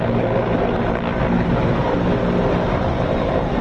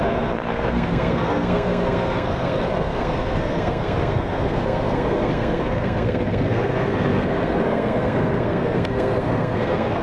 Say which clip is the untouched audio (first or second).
first